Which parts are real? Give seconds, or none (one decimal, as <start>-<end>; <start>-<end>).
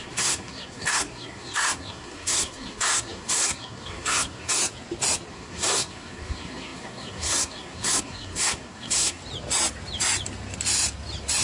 4.6-5.3; 9.2-11.4